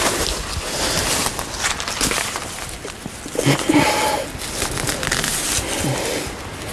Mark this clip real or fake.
real